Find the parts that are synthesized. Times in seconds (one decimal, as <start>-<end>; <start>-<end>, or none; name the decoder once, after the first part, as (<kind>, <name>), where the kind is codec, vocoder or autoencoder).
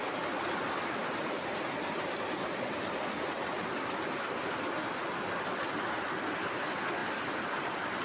none